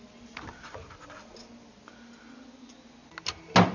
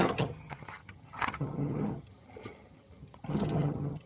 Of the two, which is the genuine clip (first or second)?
first